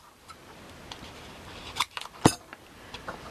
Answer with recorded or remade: recorded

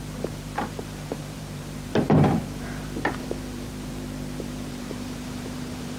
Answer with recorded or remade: remade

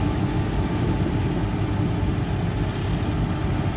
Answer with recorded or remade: recorded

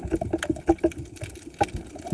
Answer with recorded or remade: recorded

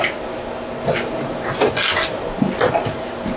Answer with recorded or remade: recorded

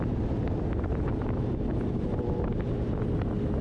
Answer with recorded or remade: recorded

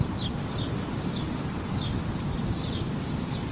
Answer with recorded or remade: recorded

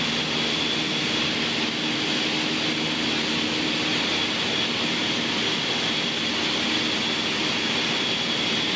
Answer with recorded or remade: recorded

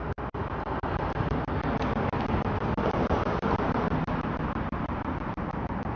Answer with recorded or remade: recorded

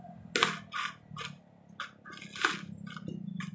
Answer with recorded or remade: recorded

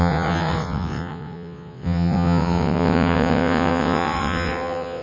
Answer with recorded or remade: remade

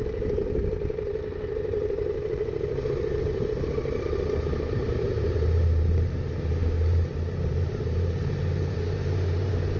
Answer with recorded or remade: remade